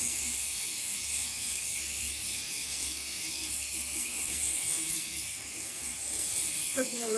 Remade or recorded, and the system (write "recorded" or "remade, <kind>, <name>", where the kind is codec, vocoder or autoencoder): remade, codec, SNAC